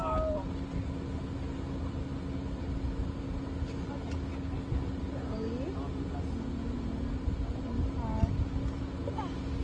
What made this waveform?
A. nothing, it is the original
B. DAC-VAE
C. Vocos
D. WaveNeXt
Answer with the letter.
A